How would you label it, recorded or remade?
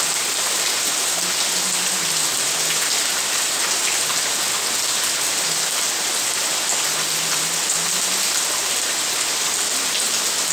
recorded